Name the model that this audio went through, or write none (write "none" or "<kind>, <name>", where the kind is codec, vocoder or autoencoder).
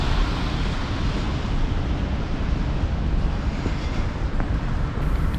vocoder, BigVGAN v2